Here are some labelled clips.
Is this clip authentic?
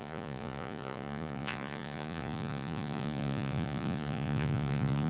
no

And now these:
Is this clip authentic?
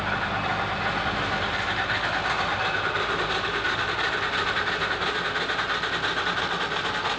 yes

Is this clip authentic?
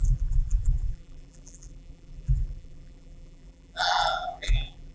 no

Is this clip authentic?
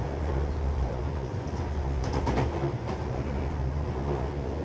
no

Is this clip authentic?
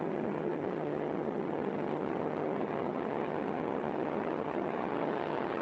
no